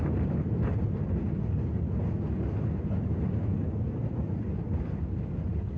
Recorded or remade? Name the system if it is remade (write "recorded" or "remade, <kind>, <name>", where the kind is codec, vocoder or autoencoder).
recorded